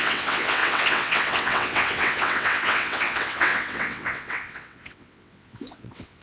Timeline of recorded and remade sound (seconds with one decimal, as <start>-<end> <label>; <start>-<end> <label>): 0.0-6.2 remade

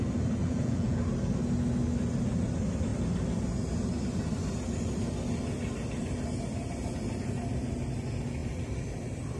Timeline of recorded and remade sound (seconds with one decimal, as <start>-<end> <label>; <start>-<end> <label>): 0.0-0.4 recorded; 0.4-1.0 remade; 1.0-9.4 recorded

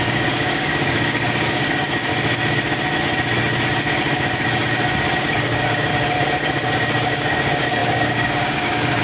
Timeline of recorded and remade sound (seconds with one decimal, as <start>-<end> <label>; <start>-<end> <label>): 0.0-2.1 remade; 2.1-5.2 recorded; 5.2-5.9 remade; 5.9-7.1 recorded; 7.1-9.0 remade

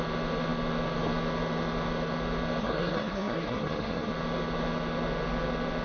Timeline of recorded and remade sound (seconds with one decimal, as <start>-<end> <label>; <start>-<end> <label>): 0.0-2.6 recorded; 2.6-4.1 remade; 4.1-5.8 recorded

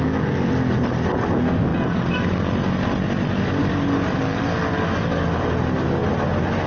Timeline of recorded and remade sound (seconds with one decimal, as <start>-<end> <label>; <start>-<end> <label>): 0.0-6.7 recorded